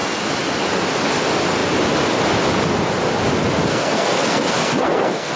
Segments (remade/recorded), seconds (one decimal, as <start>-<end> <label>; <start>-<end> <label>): 0.0-3.7 recorded; 3.7-5.4 remade